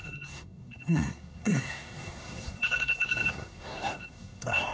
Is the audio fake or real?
fake